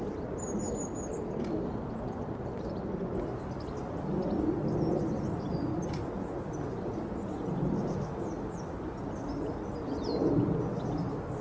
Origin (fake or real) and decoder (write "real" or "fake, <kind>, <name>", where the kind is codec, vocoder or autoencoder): real